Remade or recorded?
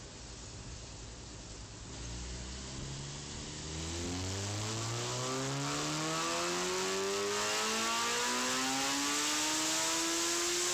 recorded